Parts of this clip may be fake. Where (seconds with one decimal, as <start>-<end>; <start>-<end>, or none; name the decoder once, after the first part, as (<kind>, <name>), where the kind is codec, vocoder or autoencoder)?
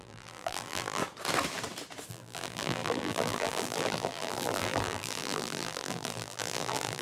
0.0-1.0 (vocoder, BigVGAN v2); 2.1-7.0